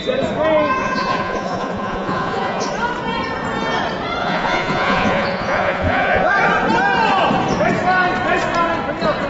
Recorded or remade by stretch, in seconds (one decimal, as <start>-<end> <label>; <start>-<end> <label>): 0.0-0.8 recorded; 0.8-2.7 remade; 2.7-4.2 recorded; 4.2-6.3 remade; 6.3-9.3 recorded